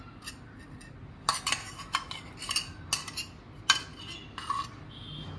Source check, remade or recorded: recorded